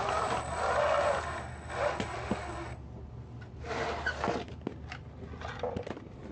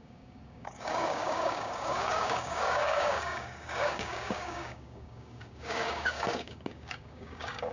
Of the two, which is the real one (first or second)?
first